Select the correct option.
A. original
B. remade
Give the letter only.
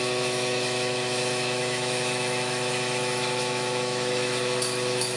B